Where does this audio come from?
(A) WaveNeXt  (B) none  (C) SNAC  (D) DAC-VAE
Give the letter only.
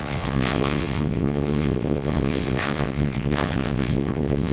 A